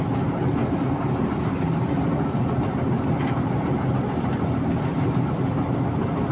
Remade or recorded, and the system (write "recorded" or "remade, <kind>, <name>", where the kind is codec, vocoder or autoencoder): recorded